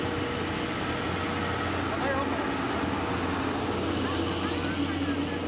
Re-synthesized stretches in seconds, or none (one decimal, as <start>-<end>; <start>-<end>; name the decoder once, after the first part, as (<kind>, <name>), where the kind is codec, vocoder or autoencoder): none